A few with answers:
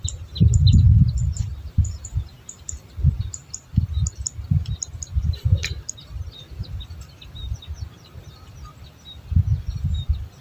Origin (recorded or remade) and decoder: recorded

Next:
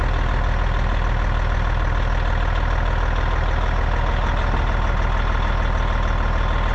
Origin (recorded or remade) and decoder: recorded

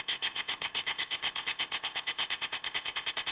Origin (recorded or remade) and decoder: remade, codec, ZipCodec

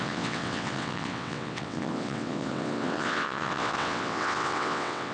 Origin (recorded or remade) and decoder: remade, vocoder, WaveNeXt